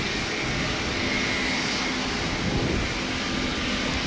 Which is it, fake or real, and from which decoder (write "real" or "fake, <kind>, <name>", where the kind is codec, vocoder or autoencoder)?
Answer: real